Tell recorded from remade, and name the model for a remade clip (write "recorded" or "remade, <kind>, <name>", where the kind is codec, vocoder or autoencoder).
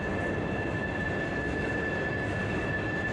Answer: recorded